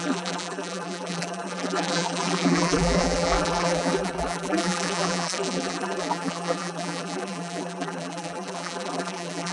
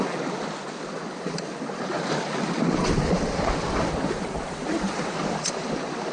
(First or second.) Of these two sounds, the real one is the second